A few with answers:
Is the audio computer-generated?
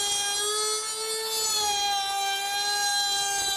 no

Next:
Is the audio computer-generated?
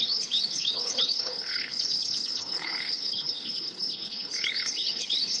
yes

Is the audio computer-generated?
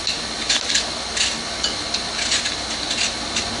no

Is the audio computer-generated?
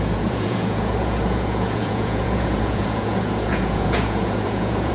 yes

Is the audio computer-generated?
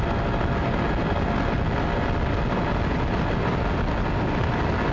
no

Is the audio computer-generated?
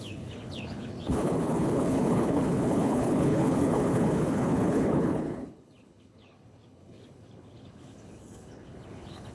yes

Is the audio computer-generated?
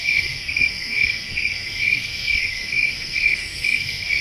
yes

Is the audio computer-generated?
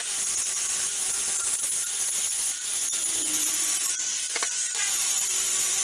yes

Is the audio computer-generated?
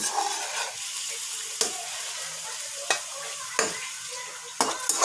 no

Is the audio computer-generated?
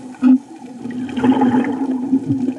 no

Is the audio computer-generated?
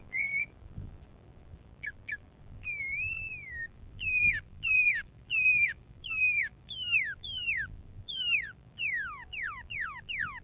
yes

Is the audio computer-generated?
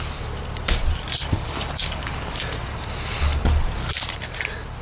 no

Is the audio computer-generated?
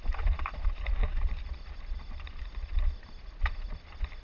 no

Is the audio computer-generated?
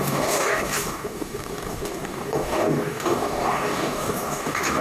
yes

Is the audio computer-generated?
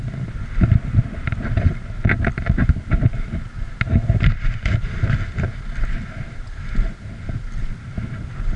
no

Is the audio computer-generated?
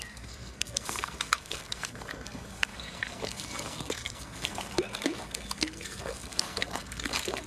yes